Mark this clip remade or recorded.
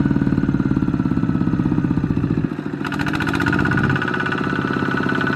recorded